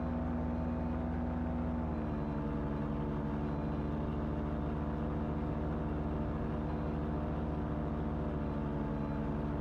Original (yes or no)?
yes